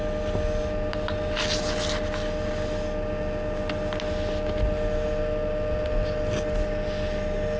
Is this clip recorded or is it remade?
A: recorded